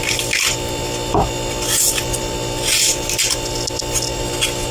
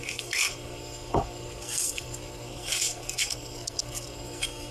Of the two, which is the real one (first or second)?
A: first